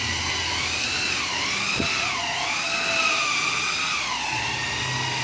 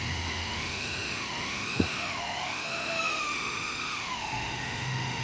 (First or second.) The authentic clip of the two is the first